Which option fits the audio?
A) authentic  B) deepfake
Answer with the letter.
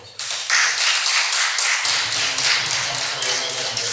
A